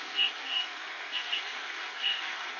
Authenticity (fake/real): fake